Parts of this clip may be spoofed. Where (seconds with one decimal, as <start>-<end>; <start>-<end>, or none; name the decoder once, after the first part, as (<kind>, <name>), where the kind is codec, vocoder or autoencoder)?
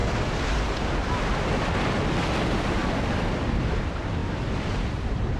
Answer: 2.1-5.4 (vocoder, BigVGAN v2)